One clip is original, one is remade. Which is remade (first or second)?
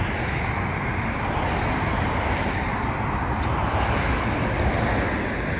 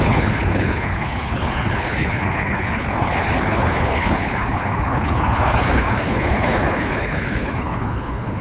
second